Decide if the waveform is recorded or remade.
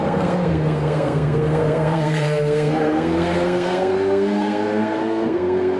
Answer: remade